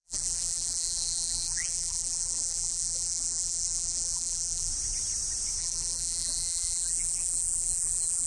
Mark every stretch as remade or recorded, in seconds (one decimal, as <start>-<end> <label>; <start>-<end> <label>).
0.0-4.7 remade; 4.7-5.6 recorded; 5.6-8.3 remade